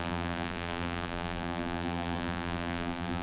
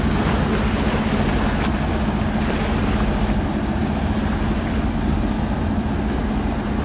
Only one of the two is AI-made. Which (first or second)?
first